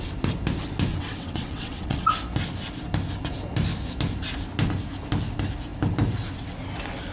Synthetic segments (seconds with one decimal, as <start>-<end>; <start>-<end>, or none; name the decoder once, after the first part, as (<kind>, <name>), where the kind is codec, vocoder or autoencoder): 0.9-2.1 (vocoder, WaveNeXt)